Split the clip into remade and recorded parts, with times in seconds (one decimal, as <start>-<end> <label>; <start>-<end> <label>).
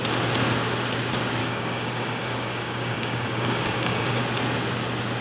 0.0-1.4 recorded; 1.4-4.2 remade; 4.2-5.2 recorded